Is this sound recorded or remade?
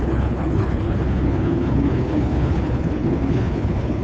remade